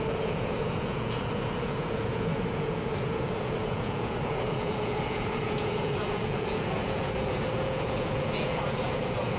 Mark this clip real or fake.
fake